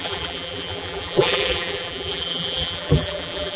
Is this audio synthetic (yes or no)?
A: yes